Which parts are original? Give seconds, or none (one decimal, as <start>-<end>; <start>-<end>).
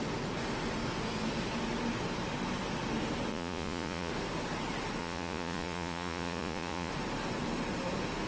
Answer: 0.0-3.3; 4.1-5.0; 6.9-8.3